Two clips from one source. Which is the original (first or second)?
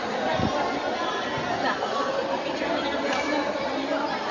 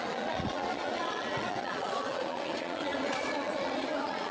first